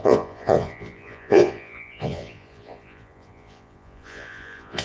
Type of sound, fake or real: fake